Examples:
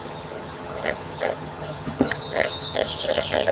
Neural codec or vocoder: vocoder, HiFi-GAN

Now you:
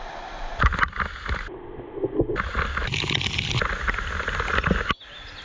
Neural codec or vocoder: none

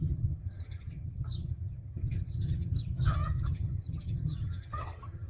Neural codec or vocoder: vocoder, HiFi-GAN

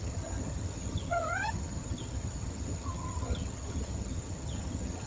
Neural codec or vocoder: vocoder, HiFi-GAN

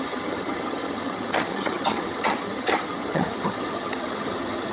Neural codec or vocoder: vocoder, HiFi-GAN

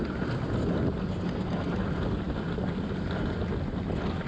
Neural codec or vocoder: none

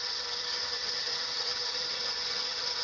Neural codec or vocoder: vocoder, HiFi-GAN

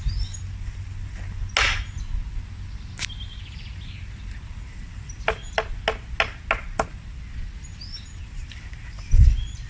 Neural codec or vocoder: none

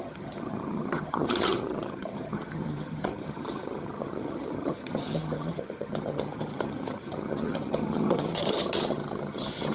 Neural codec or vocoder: vocoder, HiFi-GAN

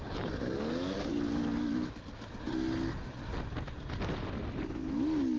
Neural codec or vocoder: none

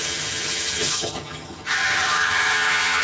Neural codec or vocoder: vocoder, HiFi-GAN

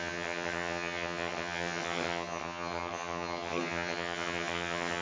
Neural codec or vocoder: vocoder, HiFi-GAN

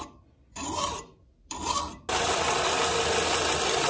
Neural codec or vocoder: none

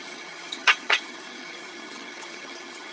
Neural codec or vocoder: vocoder, HiFi-GAN